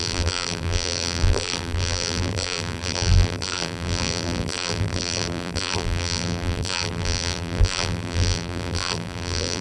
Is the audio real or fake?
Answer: fake